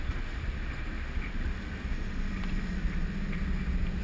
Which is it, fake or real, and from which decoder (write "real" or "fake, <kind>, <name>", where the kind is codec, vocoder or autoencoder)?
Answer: real